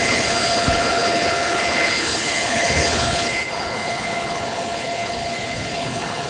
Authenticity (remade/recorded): remade